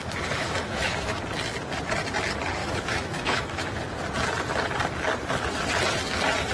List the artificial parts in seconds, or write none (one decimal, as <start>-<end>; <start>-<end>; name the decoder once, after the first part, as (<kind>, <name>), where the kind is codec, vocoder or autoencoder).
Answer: 0.4-1.2 (autoencoder, DAC-VAE); 2.6-3.8